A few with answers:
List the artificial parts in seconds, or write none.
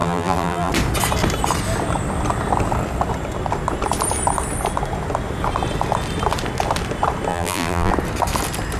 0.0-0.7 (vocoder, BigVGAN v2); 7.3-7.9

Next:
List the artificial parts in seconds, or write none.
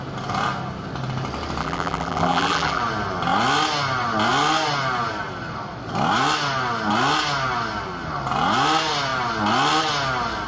1.6-2.8 (vocoder, BigVGAN v2)